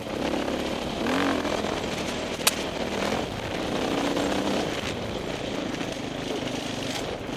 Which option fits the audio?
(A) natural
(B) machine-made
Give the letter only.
A